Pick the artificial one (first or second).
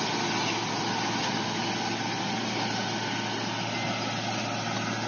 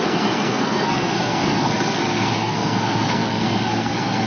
second